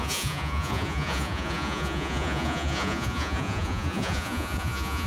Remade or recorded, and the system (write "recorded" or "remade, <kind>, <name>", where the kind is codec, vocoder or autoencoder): remade, vocoder, Vocos